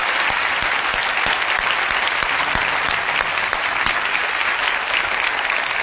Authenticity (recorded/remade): recorded